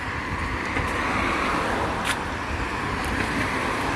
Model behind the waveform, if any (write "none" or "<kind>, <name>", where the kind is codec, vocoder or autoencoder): none